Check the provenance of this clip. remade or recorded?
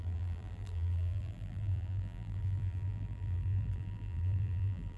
remade